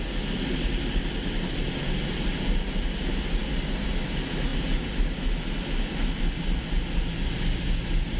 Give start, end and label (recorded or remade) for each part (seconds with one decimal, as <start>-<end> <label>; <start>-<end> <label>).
0.0-8.2 recorded